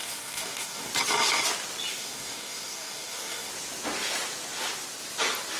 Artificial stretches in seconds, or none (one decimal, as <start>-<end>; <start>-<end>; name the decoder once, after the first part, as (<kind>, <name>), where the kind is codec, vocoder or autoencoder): 0.0-0.9 (codec, DAC); 1.9-3.5